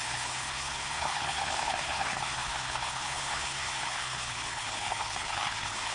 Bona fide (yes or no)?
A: no